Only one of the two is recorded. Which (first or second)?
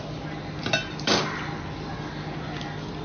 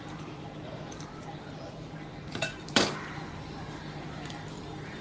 first